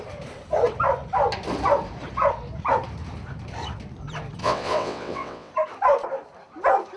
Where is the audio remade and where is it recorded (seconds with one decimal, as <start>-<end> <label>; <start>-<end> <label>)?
0.0-4.4 recorded; 4.4-5.5 remade; 5.5-7.0 recorded